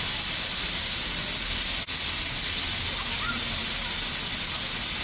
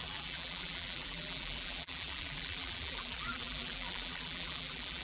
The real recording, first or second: first